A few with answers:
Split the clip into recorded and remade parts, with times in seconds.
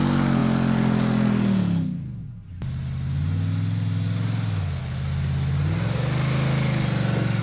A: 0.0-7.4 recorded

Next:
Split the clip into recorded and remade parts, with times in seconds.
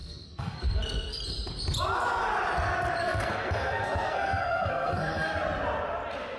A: 0.0-1.2 remade; 1.2-3.0 recorded; 3.0-5.3 remade; 5.3-6.4 recorded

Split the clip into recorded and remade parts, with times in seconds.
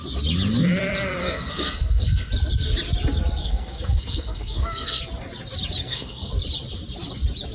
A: 0.0-1.2 recorded; 1.2-2.3 remade; 2.3-3.4 recorded; 3.4-5.0 remade; 5.0-5.8 recorded; 5.8-6.3 remade; 6.3-7.5 recorded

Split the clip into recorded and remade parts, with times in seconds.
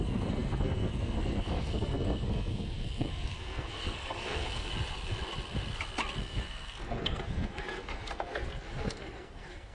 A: 0.0-4.7 remade; 4.7-6.2 recorded; 6.2-9.7 remade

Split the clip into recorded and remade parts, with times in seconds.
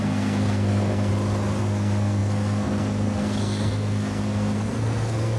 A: 0.0-1.1 remade; 1.1-1.6 recorded; 1.6-5.4 remade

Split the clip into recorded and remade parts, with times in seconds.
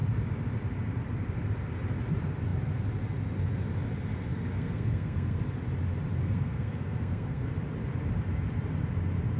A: 0.0-4.3 recorded; 4.3-5.4 remade; 5.4-6.2 recorded; 6.2-7.5 remade; 7.5-9.4 recorded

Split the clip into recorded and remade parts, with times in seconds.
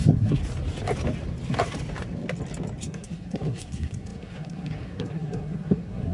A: 0.0-0.4 remade; 0.4-2.8 recorded; 2.8-6.1 remade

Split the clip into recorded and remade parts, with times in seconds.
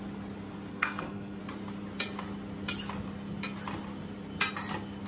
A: 0.0-0.7 recorded; 0.7-1.4 remade; 1.4-5.1 recorded